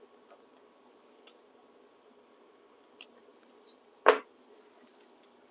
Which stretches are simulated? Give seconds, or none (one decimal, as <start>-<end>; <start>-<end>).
3.3-4.2